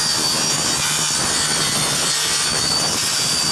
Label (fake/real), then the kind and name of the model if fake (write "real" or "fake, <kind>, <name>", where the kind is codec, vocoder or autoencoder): real